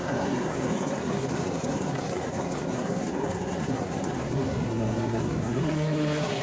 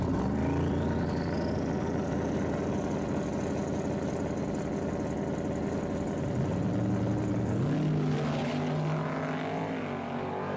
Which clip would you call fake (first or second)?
first